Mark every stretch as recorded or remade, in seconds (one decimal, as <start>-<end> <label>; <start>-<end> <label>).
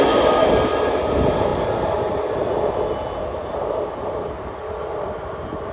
0.0-5.7 recorded